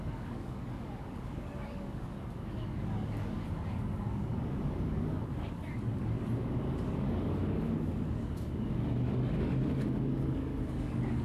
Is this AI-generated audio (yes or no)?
yes